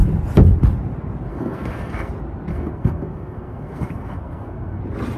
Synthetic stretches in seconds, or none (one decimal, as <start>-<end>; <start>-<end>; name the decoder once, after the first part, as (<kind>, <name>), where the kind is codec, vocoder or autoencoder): 1.3-2.1 (codec, SNAC); 2.5-4.8